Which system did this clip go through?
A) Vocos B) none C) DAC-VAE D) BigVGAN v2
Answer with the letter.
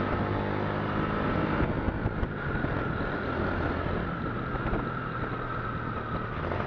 B